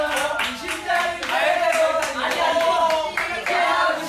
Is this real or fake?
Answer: fake